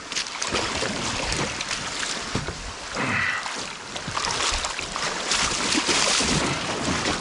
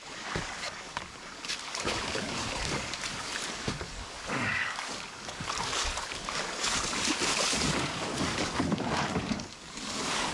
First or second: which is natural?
first